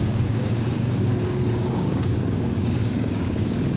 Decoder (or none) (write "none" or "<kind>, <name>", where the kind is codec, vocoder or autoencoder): codec, DAC